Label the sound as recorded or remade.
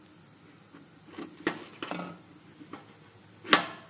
recorded